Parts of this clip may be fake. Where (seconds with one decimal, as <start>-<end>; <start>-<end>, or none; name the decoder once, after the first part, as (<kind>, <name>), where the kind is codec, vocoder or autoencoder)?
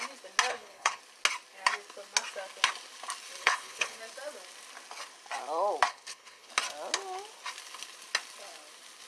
0.5-1.0 (codec, HILCodec); 3.4-4.0; 5.9-6.5